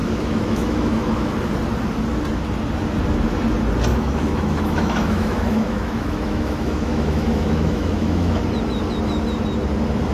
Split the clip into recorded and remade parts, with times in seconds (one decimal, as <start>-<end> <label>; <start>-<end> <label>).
0.0-1.3 remade; 1.3-3.9 recorded; 3.9-8.4 remade; 8.4-10.1 recorded